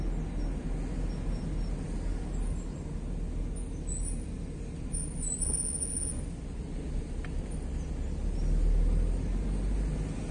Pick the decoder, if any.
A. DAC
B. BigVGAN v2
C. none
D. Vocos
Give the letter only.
C